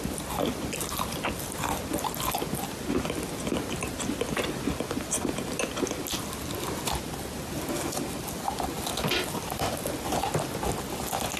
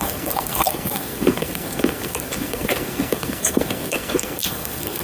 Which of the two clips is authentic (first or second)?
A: first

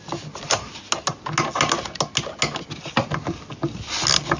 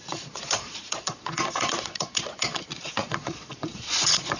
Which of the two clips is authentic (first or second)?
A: first